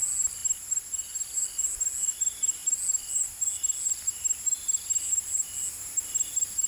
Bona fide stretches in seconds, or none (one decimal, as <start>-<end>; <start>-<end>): 0.0-6.7